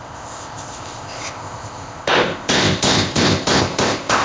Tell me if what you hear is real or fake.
fake